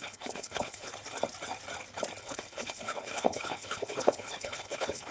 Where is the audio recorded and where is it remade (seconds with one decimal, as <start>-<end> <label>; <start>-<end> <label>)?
0.0-0.9 remade; 0.9-2.2 recorded; 2.2-5.1 remade